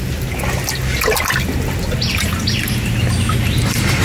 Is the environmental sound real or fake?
real